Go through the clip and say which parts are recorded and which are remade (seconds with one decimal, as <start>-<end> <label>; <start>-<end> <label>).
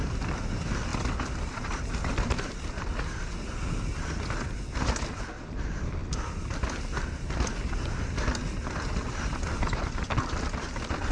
0.0-11.1 recorded